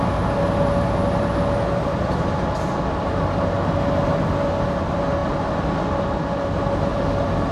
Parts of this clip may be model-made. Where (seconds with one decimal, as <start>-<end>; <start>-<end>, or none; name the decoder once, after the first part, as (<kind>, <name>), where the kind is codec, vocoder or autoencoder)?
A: none